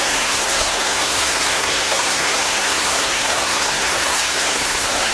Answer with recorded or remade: remade